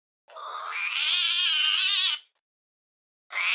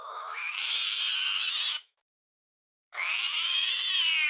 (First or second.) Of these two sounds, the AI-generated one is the second